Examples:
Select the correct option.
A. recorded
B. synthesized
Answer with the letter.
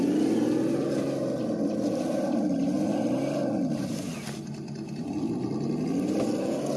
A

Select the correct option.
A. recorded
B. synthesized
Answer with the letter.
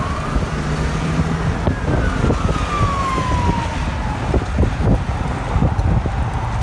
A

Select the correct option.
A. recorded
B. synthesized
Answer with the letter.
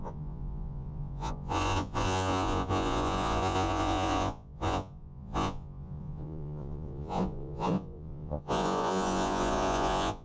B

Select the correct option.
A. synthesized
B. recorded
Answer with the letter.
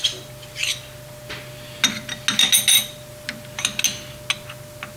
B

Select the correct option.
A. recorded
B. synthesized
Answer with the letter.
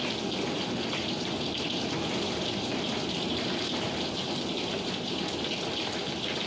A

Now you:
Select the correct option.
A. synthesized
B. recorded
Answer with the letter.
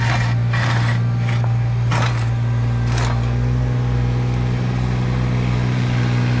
B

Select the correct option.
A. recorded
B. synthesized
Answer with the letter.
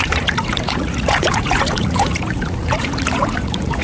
B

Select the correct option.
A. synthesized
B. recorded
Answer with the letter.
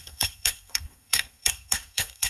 A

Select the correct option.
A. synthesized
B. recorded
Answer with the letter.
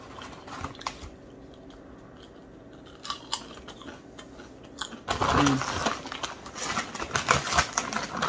B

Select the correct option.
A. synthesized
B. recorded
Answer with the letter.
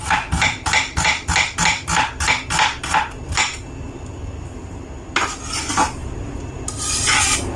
B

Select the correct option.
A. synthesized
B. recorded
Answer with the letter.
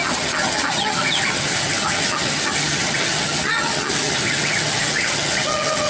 A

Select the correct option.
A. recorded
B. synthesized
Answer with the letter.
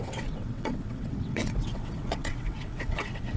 B